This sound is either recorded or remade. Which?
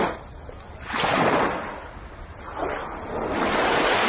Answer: recorded